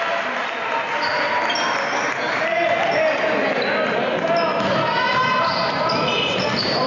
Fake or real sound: real